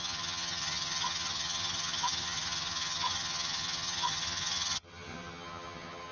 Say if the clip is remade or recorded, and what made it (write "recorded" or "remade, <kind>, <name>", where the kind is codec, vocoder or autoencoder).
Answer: remade, vocoder, HiFi-GAN